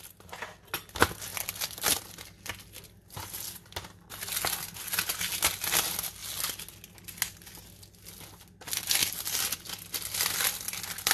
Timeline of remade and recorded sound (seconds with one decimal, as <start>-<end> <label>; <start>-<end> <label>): 0.0-9.0 recorded; 9.0-9.6 remade; 9.6-11.1 recorded